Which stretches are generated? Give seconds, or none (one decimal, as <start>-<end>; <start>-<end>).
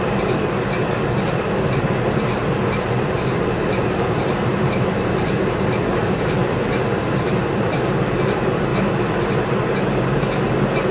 0.0-10.9